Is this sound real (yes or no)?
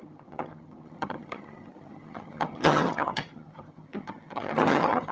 no